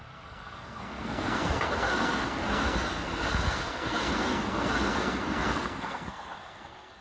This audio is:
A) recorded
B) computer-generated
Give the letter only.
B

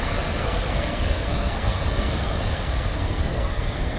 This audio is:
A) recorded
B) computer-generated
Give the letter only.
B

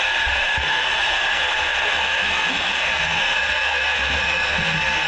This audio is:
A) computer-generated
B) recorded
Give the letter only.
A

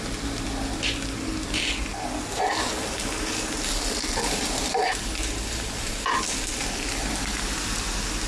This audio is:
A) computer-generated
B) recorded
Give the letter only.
B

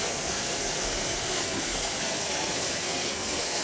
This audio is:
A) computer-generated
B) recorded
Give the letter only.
A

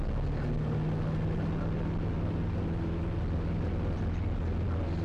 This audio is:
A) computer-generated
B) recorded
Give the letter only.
B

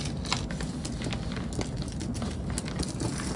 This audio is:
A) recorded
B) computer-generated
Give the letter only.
A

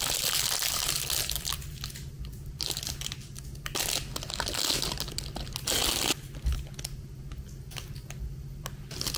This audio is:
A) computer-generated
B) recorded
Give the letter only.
B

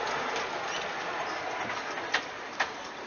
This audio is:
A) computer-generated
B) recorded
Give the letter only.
B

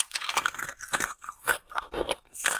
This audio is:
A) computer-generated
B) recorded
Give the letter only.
A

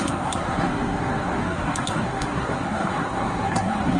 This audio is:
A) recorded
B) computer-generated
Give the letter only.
B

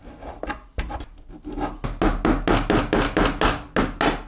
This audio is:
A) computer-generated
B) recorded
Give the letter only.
B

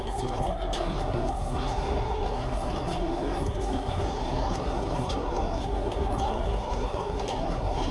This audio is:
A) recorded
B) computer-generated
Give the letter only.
B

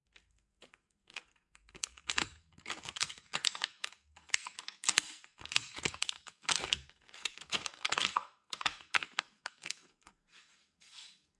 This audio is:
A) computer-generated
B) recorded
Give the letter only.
A